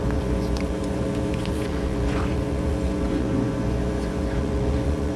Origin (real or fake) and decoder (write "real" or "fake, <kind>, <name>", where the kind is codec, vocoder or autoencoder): fake, vocoder, Vocos